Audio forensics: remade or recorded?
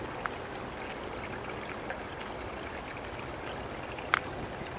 recorded